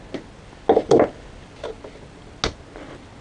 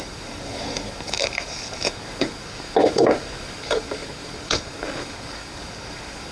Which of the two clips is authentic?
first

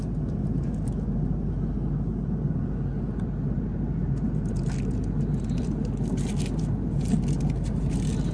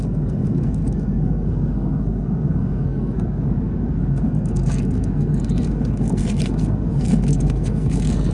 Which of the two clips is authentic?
first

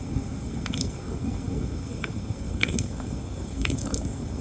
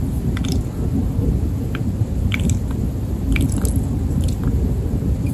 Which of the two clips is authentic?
second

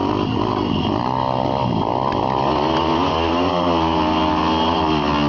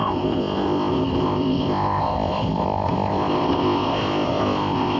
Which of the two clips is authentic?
first